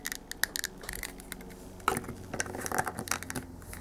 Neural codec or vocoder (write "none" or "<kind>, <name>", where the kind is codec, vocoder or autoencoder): none